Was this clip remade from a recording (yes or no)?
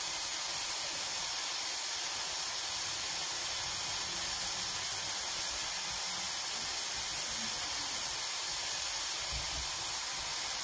no